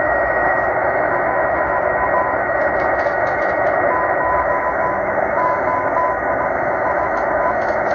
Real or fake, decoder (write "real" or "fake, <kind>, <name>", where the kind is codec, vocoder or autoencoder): fake, autoencoder, DAC-VAE